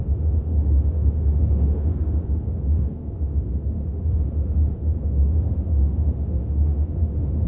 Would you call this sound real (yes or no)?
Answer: no